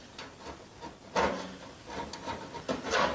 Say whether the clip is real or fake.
real